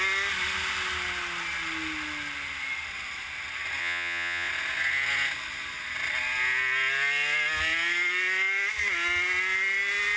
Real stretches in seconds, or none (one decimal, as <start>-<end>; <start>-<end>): 0.0-3.8; 4.5-10.2

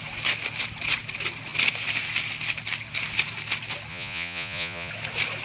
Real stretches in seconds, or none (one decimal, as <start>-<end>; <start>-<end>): 0.0-3.9; 4.9-5.4

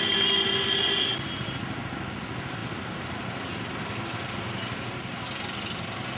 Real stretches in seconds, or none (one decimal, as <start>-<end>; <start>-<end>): 0.0-6.2

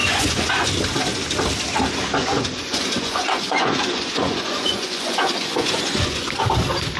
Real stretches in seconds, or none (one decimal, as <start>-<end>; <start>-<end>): 0.7-2.2; 6.4-7.0

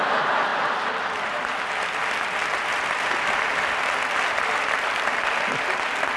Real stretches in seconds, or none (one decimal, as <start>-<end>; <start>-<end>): 0.0-6.2